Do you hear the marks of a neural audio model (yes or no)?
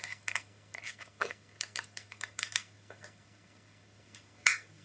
yes